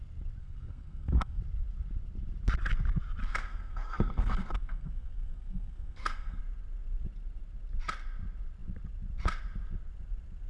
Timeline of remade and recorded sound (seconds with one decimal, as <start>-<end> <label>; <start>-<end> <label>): 0.0-0.4 recorded; 0.4-1.4 remade; 1.4-3.2 recorded; 3.2-6.4 remade; 6.4-10.5 recorded